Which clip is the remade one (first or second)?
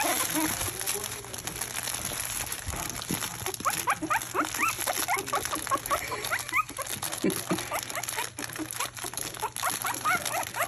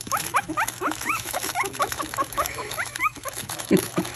second